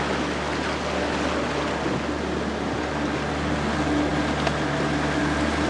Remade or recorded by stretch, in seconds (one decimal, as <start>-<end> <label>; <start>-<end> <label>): 0.0-5.7 recorded